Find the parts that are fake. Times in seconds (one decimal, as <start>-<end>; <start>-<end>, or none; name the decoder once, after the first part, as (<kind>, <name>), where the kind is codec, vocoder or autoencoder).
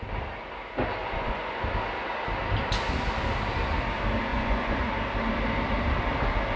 1.0-1.6 (vocoder, Vocos); 4.3-4.9